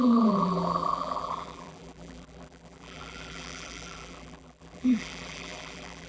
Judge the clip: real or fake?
fake